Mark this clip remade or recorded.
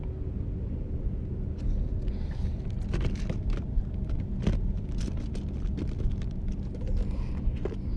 recorded